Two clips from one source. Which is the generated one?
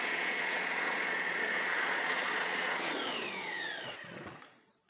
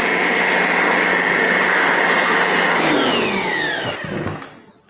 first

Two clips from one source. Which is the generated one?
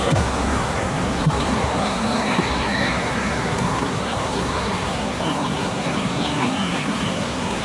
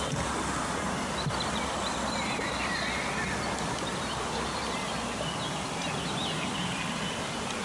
first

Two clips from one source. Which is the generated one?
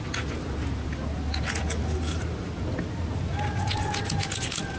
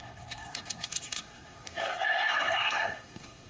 second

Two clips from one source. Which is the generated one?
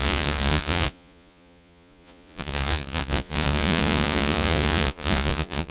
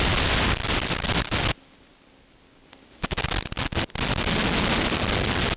first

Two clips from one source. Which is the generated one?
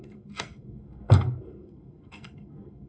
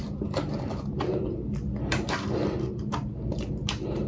first